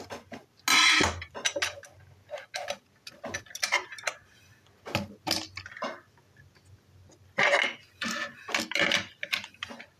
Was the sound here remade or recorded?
recorded